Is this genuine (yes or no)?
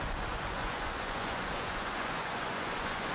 no